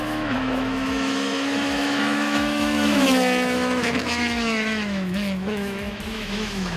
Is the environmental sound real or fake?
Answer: fake